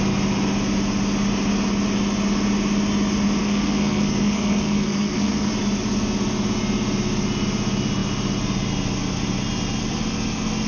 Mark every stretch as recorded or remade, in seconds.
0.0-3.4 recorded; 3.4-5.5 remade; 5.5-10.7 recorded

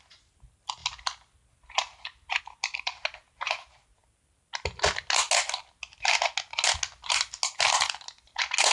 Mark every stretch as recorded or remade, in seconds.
0.0-8.7 recorded